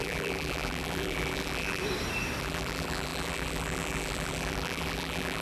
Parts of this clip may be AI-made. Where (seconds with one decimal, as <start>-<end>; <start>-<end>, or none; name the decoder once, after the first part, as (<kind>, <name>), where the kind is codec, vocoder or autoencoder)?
0.0-1.8 (vocoder, BigVGAN v2); 2.4-5.4